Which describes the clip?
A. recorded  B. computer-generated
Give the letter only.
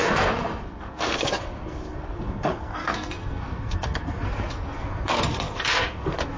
B